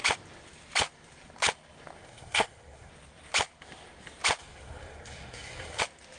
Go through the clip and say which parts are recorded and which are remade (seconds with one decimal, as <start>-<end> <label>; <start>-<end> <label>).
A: 0.0-2.0 recorded; 2.0-2.9 remade; 2.9-4.4 recorded; 4.4-5.8 remade; 5.8-6.2 recorded